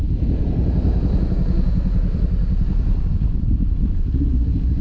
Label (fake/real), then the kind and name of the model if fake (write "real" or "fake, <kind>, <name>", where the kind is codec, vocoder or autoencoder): real